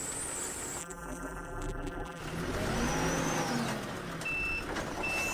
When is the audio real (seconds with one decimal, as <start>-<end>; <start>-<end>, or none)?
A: 0.0-0.8; 2.2-5.3